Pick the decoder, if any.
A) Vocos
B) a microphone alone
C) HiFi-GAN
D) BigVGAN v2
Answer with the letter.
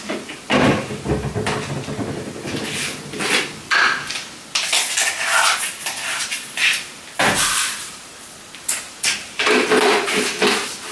B